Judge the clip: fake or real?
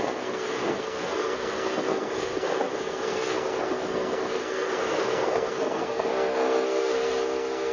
fake